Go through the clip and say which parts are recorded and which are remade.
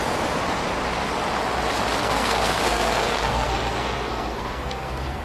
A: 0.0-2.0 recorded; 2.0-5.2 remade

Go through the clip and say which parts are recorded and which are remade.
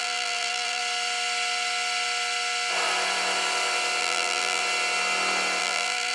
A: 0.0-0.8 remade; 0.8-4.0 recorded; 4.0-4.6 remade; 4.6-5.6 recorded; 5.6-6.1 remade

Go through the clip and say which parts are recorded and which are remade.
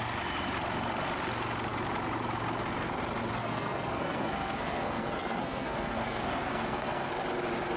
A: 0.0-3.4 recorded; 3.4-7.1 remade; 7.1-7.8 recorded